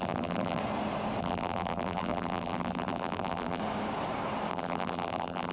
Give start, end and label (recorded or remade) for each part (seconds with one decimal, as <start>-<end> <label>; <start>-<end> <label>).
0.0-0.6 remade; 0.6-1.2 recorded; 1.2-3.6 remade; 3.6-4.5 recorded; 4.5-5.5 remade